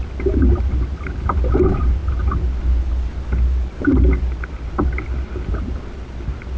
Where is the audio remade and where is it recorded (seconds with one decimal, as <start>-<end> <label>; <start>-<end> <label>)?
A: 0.0-6.6 recorded